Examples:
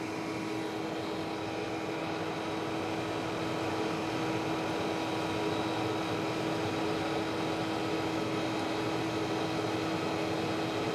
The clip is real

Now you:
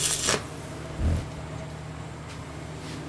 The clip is real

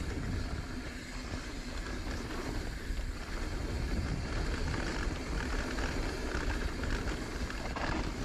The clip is real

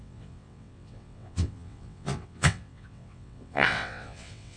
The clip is fake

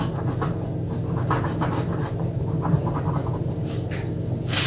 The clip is real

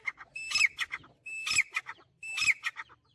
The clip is real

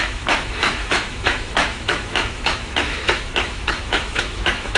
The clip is fake